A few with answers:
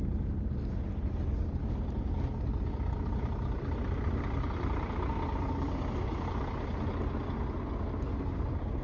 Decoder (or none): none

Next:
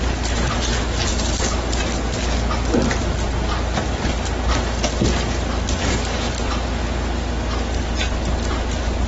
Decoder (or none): none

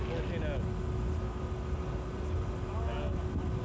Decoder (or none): none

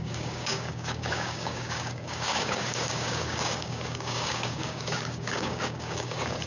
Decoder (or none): codec, DAC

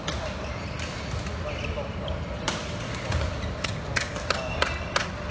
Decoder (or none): none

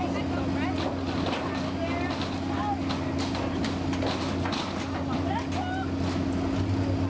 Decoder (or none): none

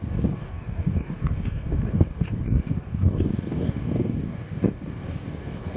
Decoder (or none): codec, DAC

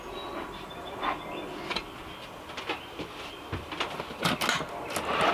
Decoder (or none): none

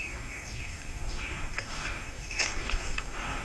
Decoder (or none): codec, DAC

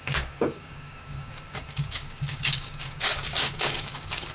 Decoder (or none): codec, DAC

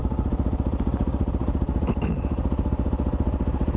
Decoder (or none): none